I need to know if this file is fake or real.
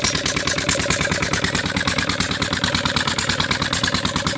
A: fake